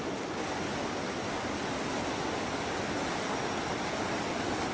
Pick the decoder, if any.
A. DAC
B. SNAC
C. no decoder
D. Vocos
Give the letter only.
C